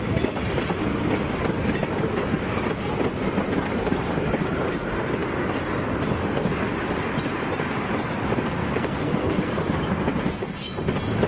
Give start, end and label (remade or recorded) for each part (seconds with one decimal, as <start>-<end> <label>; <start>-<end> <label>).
0.0-8.6 recorded; 8.6-9.6 remade; 9.6-11.3 recorded